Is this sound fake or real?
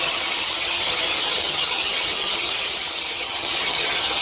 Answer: fake